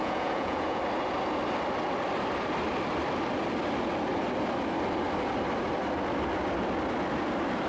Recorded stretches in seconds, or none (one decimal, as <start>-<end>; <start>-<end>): 0.8-7.7